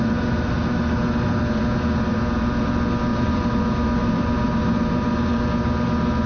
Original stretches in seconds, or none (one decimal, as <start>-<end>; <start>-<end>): 0.0-3.1; 3.6-4.0; 5.4-6.3